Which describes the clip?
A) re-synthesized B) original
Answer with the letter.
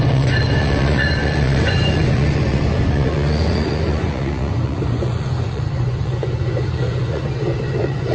A